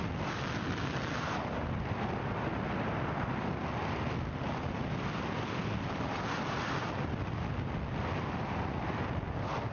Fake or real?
real